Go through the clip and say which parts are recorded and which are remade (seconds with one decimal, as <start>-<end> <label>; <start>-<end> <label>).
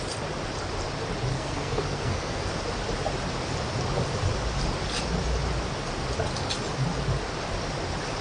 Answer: 0.0-1.3 recorded; 1.3-2.5 remade; 2.5-8.2 recorded